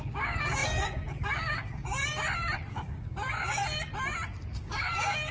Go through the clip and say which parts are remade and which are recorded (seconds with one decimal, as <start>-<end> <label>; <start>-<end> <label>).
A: 0.0-2.1 remade; 2.1-2.7 recorded; 2.7-3.6 remade; 3.6-4.5 recorded; 4.5-5.3 remade